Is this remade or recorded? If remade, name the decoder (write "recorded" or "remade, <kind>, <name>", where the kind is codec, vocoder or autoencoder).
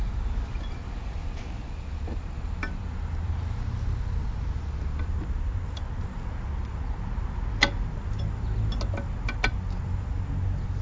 recorded